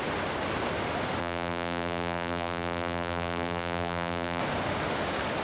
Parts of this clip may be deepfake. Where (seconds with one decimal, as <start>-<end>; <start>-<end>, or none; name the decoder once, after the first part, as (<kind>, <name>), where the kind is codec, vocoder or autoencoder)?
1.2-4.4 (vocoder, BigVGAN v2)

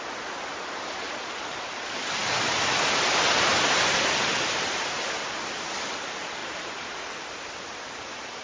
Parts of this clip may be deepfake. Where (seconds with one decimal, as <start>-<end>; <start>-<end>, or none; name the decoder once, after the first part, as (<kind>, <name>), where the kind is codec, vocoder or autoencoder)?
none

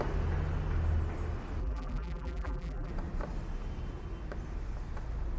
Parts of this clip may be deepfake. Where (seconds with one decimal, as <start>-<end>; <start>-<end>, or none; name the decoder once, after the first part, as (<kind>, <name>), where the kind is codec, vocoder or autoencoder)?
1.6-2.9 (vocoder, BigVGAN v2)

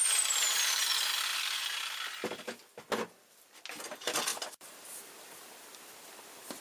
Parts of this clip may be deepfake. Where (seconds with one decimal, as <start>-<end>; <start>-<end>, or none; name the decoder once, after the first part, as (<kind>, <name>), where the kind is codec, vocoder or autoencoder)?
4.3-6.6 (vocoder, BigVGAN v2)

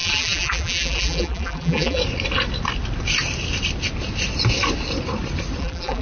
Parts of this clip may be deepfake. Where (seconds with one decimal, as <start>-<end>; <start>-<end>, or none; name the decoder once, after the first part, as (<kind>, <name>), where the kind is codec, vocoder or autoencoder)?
0.0-2.0 (vocoder, BigVGAN v2); 5.6-6.0

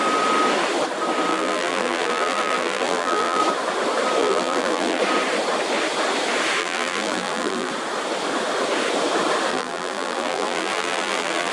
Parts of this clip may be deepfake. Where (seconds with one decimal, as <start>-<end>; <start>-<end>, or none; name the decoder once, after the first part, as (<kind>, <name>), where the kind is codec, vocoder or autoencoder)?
1.3-3.4 (vocoder, BigVGAN v2); 4.2-5.0; 6.6-7.7; 9.5-11.5